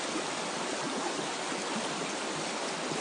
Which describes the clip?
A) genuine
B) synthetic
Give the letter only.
A